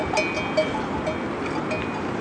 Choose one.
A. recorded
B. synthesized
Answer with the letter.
A